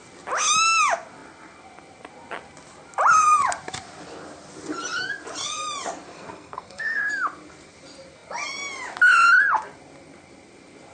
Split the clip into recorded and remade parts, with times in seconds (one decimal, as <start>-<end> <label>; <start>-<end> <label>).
0.0-6.1 recorded; 6.1-7.0 remade; 7.0-10.9 recorded